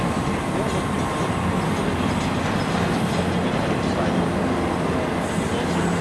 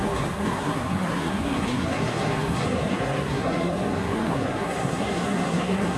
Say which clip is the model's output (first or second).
second